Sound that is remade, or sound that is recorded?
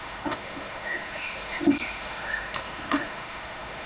remade